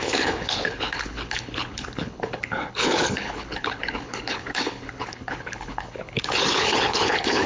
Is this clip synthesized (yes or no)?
yes